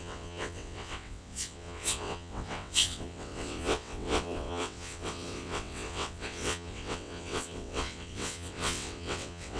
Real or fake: fake